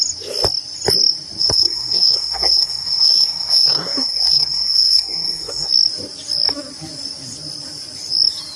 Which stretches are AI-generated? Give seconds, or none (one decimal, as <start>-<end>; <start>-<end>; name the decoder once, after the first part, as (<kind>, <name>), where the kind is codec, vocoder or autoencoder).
1.4-5.7 (codec, SNAC)